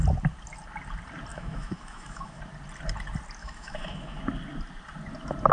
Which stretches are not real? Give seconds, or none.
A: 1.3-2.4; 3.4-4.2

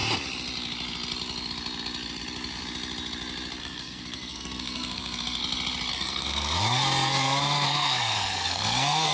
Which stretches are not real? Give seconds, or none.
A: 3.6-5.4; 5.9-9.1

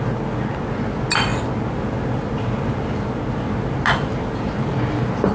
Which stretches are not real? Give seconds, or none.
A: none

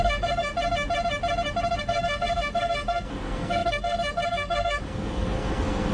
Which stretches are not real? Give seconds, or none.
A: 0.0-0.5; 1.8-5.9

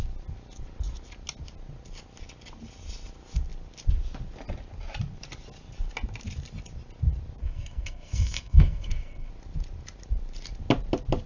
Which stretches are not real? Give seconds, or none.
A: 7.4-9.3